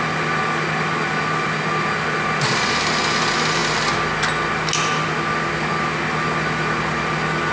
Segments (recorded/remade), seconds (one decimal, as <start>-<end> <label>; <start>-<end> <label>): 0.0-7.5 recorded